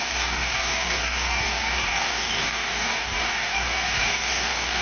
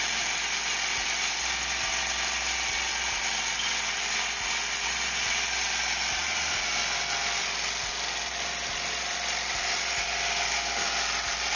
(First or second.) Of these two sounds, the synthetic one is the first